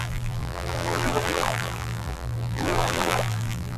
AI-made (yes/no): yes